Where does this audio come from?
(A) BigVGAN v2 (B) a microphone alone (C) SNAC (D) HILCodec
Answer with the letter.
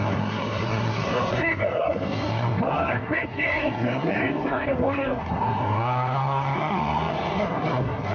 C